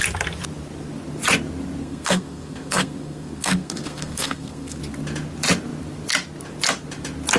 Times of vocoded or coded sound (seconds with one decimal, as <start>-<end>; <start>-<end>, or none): 1.8-4.8